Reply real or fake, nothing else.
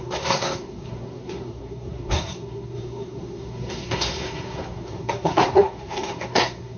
fake